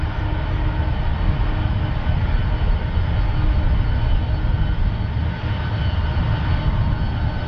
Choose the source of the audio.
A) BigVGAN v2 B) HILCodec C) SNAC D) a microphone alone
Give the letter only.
D